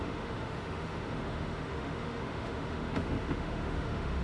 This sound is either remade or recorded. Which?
remade